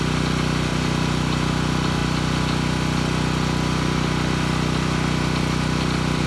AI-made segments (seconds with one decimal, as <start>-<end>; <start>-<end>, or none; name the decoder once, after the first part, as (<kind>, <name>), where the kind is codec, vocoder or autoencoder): 0.7-1.5 (vocoder, BigVGAN v2)

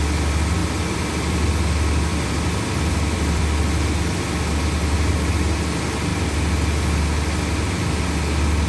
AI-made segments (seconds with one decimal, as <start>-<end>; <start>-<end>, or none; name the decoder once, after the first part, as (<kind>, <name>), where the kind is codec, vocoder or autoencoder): 0.6-1.5 (vocoder, BigVGAN v2); 2.1-3.4

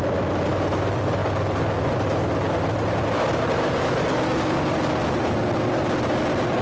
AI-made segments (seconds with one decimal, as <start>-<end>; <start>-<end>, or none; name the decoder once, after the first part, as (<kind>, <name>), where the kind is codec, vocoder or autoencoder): none

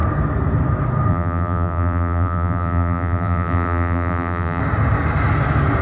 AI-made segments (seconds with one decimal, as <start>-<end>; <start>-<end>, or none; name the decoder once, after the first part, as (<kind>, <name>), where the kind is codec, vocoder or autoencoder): 1.1-4.6 (vocoder, BigVGAN v2)

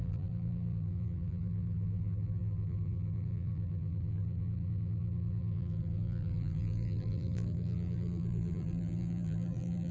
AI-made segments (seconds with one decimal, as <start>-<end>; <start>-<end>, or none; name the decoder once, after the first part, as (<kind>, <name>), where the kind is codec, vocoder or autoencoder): 0.0-9.9 (vocoder, BigVGAN v2)

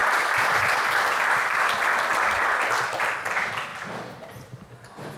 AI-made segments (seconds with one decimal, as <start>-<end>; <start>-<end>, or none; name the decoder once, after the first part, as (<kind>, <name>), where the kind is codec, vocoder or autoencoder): 0.0-3.1 (vocoder, BigVGAN v2); 3.7-4.3

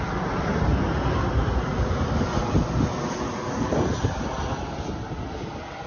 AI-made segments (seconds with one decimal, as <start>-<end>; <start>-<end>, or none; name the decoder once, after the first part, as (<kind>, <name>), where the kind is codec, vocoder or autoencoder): 0.7-4.2 (vocoder, BigVGAN v2)

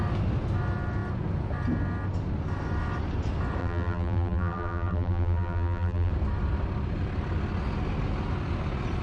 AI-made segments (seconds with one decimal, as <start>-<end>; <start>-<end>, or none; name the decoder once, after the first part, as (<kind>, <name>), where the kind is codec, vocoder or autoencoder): 3.6-6.1 (vocoder, BigVGAN v2)